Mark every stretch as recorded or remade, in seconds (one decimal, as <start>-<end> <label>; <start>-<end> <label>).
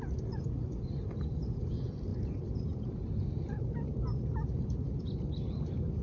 0.0-6.0 recorded